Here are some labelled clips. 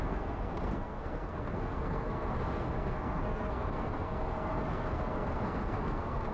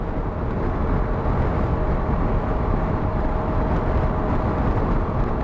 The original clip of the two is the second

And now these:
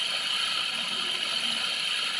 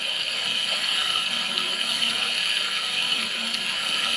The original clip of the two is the first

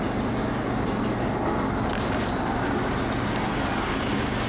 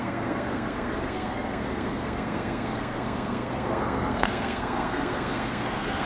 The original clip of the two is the first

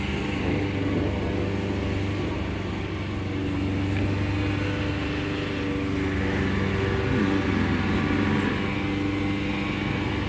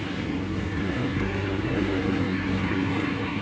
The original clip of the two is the first